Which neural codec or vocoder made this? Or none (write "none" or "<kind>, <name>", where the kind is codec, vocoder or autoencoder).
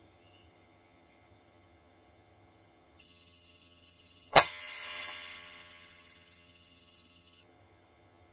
vocoder, HiFi-GAN